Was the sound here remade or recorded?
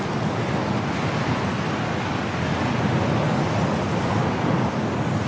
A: recorded